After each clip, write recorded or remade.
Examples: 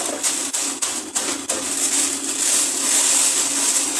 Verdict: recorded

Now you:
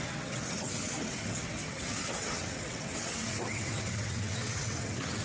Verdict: remade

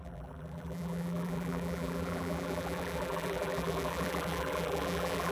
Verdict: remade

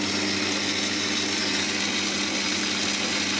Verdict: recorded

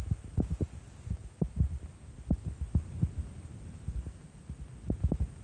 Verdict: recorded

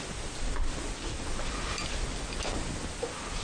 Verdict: recorded